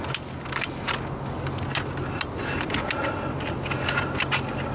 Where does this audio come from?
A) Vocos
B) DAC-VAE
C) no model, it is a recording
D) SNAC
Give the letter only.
C